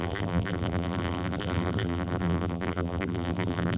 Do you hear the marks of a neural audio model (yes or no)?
yes